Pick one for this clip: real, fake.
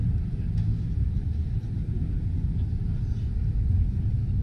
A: real